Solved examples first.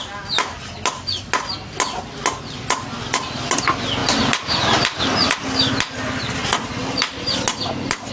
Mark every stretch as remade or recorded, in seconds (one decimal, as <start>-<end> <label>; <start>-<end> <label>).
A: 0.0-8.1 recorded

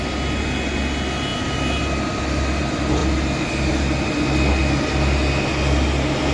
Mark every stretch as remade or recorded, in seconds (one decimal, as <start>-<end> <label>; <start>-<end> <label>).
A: 0.0-6.3 recorded

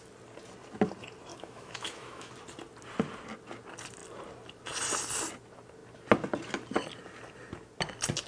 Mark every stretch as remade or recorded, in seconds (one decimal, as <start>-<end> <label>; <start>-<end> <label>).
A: 0.0-1.3 recorded; 1.3-2.3 remade; 2.3-8.3 recorded